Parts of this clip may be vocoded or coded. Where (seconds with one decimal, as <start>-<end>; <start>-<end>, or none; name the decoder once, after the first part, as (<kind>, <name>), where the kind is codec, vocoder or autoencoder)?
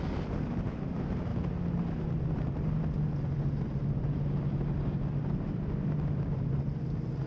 none